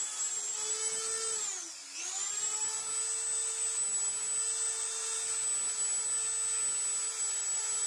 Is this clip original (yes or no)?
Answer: yes